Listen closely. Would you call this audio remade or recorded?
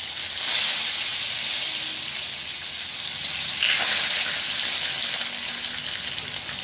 recorded